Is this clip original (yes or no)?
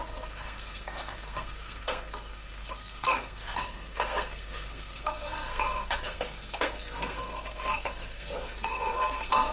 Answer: no